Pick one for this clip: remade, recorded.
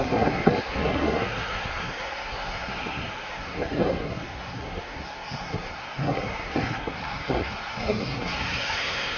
remade